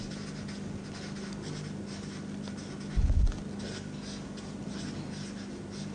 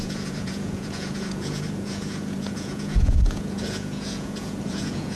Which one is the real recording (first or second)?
first